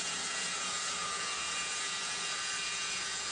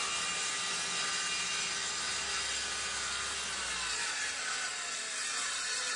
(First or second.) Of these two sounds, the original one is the second